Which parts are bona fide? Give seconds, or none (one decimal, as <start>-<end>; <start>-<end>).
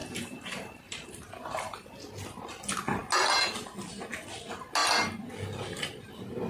1.9-6.5